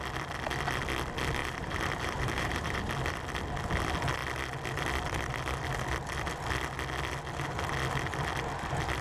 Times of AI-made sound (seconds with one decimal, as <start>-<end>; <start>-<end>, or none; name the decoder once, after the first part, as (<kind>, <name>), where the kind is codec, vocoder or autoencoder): 1.4-2.9 (vocoder, BigVGAN v2)